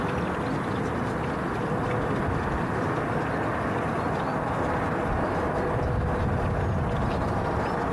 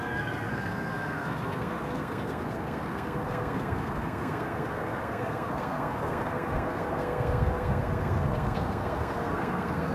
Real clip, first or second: first